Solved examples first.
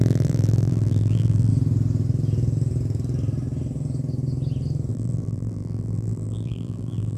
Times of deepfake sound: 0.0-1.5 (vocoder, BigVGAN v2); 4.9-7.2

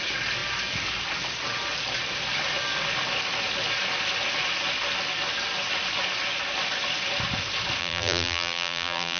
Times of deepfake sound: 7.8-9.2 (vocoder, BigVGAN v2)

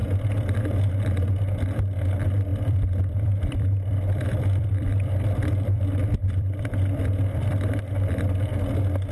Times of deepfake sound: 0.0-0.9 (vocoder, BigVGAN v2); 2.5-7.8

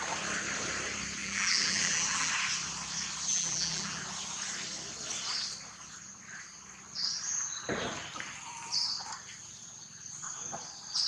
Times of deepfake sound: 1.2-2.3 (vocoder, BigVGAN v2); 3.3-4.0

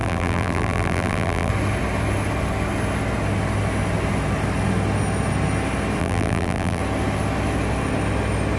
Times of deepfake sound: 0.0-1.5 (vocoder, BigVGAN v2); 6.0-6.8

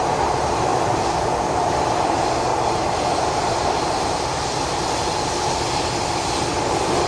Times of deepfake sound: 0.0-0.7 (vocoder, BigVGAN v2); 1.5-2.5

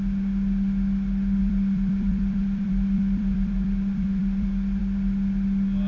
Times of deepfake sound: 1.4-4.8 (vocoder, BigVGAN v2)

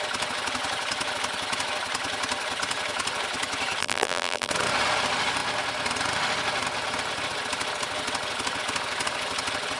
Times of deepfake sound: 3.8-4.5 (vocoder, BigVGAN v2)